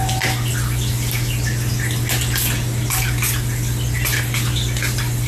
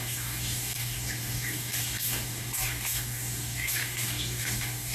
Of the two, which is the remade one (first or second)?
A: second